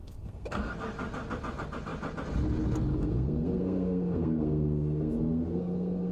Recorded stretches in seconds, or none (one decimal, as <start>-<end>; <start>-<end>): 0.7-2.9